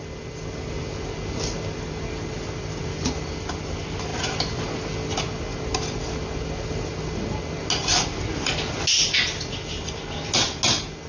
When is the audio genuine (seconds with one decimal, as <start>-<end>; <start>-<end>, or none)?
0.0-11.1

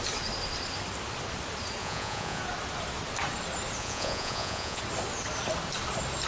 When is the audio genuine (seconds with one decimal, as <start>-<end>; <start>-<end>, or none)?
0.0-1.8; 2.4-3.8; 4.8-6.3